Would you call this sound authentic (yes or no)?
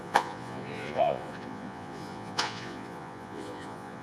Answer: no